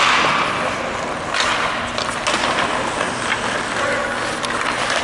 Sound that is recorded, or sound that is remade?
recorded